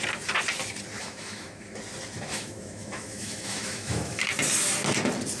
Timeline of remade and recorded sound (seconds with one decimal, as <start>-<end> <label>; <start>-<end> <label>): 0.0-1.0 recorded; 1.0-1.8 remade; 1.8-2.3 recorded; 2.3-4.2 remade; 4.2-5.4 recorded